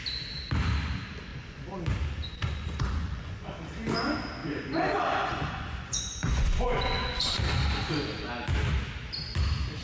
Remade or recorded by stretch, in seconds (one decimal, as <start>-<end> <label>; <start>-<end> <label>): 0.0-1.3 recorded; 1.3-1.8 remade; 1.8-2.2 recorded; 2.2-3.5 remade; 3.5-4.4 recorded; 4.4-8.3 remade; 8.3-9.8 recorded